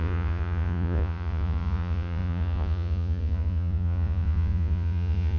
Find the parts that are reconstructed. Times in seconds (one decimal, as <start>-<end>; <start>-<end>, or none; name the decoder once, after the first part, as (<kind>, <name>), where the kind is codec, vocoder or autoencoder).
0.0-5.4 (vocoder, Vocos)